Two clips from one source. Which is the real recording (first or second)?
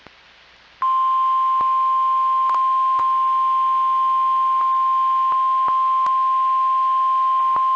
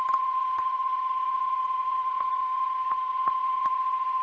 first